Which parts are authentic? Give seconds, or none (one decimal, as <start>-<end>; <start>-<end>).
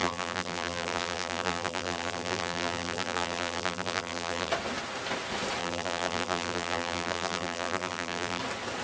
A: 4.5-5.6; 8.4-8.8